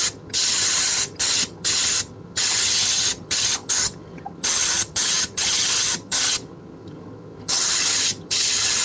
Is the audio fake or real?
fake